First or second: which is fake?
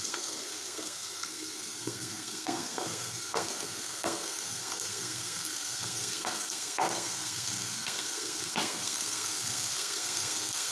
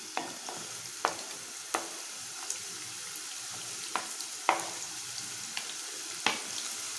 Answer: first